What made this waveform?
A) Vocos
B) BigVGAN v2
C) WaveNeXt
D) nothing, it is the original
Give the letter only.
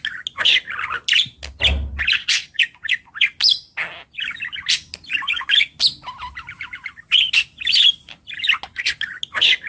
D